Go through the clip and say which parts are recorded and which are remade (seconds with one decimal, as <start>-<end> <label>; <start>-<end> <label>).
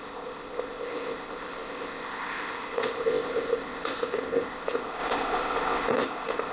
0.0-6.5 remade